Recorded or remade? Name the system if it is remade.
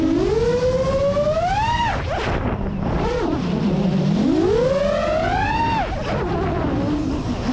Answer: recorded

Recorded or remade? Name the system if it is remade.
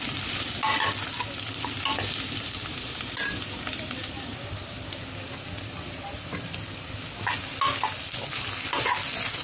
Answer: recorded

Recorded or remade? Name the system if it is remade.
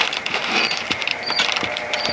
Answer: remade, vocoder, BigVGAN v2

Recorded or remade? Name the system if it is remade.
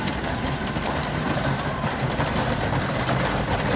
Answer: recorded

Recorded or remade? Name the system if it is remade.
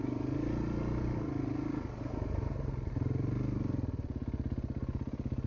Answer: recorded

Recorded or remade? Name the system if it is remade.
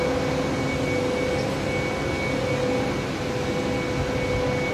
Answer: recorded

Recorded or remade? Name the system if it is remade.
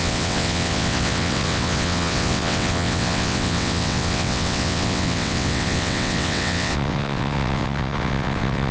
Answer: remade, vocoder, WaveNeXt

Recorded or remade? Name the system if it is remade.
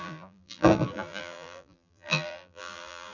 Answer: remade, vocoder, BigVGAN v2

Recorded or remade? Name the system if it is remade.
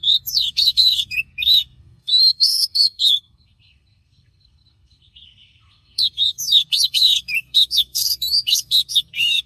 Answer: remade, codec, SNAC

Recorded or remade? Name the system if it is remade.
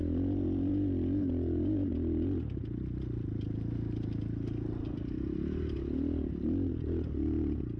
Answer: recorded